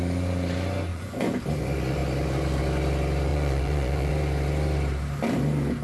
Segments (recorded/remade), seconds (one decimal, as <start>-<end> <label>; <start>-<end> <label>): 0.0-0.9 recorded; 0.9-1.4 remade; 1.4-3.3 recorded; 3.3-4.1 remade; 4.1-5.8 recorded